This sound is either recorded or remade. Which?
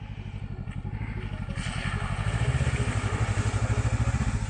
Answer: recorded